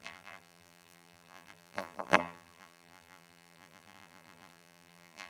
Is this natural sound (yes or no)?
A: no